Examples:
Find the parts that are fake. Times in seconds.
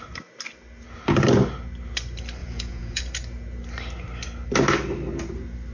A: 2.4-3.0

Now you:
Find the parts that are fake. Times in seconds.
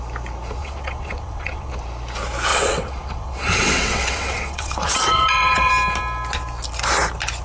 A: 0.6-1.7; 2.5-5.7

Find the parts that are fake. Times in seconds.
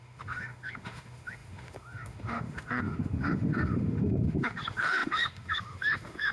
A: 0.0-6.3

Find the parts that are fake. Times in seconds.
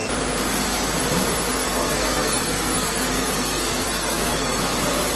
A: 1.5-4.6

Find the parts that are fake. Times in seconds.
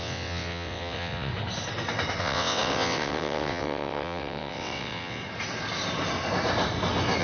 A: 0.0-1.3; 2.2-5.2